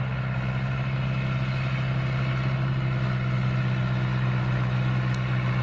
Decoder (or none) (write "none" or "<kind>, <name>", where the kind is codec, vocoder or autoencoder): none